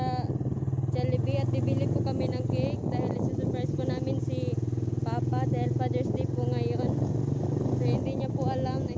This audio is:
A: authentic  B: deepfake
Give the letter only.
A